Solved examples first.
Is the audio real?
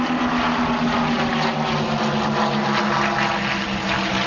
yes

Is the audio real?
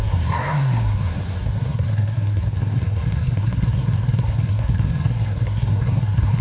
no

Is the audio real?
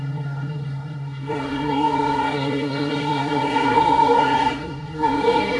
no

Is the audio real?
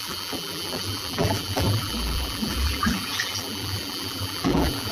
no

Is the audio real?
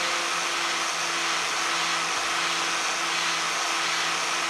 yes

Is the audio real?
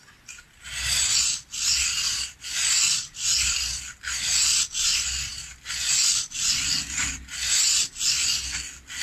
yes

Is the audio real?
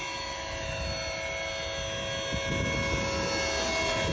yes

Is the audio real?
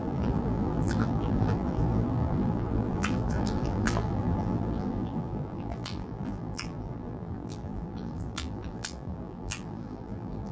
no